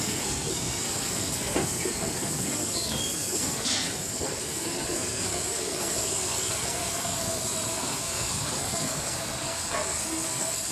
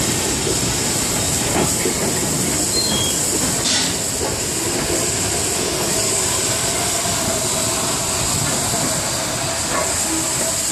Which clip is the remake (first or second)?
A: first